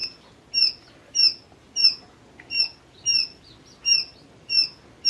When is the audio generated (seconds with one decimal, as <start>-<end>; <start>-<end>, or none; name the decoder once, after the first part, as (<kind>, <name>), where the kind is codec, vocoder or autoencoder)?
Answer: none